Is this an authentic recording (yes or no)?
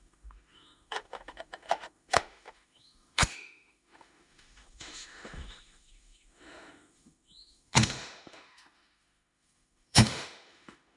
no